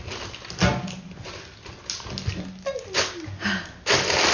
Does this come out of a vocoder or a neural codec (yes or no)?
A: no